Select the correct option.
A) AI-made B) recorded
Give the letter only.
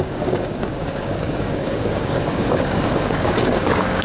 A